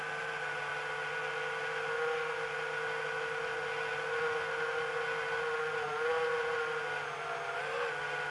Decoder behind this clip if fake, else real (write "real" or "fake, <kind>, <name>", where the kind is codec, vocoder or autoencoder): real